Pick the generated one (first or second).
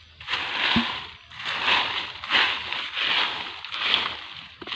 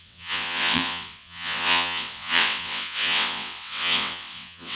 second